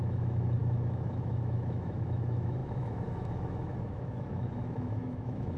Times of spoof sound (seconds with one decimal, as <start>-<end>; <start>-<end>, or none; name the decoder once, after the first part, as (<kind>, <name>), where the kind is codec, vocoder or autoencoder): 0.0-5.6 (autoencoder, DAC-VAE)